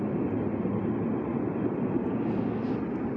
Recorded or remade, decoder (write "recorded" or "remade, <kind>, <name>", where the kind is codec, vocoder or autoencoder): recorded